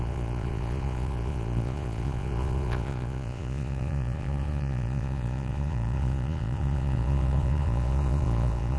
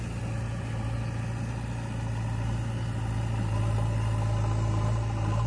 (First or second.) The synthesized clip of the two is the first